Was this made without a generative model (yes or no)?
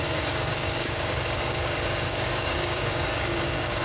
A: no